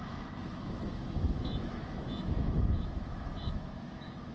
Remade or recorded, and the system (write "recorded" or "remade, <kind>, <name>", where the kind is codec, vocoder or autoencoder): remade, autoencoder, DAC-VAE